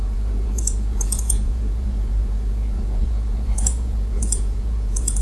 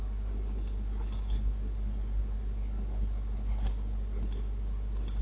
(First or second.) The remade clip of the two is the first